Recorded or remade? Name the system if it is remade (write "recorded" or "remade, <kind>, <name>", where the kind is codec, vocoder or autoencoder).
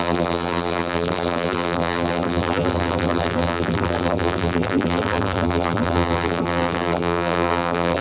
remade, vocoder, BigVGAN v2